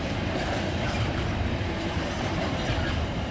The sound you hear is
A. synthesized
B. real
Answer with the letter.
A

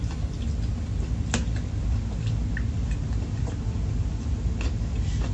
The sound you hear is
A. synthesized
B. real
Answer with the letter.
B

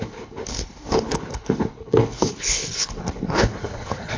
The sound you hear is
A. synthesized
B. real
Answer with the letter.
A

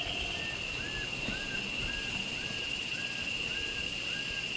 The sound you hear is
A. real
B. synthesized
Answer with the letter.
A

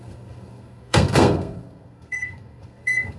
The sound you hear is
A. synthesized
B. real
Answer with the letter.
A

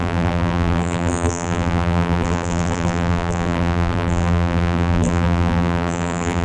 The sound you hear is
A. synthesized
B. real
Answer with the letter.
A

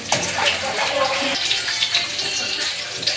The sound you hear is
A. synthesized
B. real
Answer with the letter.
B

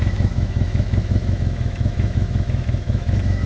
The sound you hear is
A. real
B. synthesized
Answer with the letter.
B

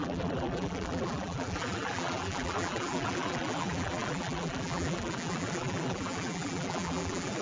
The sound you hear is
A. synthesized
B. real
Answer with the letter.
A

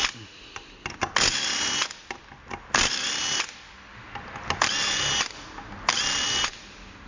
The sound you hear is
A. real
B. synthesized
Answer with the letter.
A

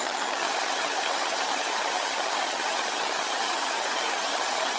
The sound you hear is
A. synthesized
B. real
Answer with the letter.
A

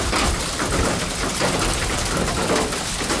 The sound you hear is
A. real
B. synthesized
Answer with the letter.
A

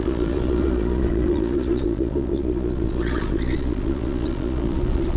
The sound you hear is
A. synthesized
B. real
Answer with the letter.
A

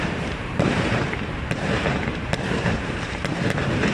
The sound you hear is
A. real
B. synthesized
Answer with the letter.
B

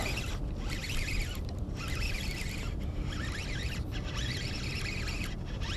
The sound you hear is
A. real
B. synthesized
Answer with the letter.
A